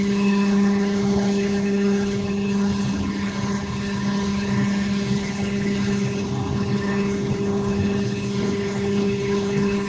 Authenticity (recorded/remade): remade